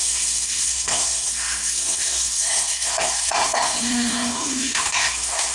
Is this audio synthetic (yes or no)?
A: yes